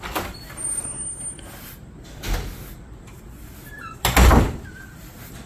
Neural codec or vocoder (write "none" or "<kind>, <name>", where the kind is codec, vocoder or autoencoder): none